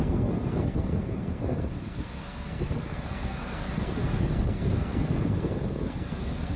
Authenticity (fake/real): fake